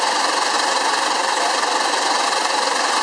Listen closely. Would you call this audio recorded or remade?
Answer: recorded